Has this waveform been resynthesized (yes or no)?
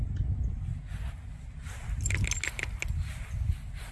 no